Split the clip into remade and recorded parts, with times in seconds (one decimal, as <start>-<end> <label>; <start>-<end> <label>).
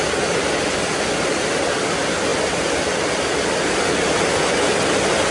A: 0.0-2.3 recorded; 2.3-3.1 remade; 3.1-5.3 recorded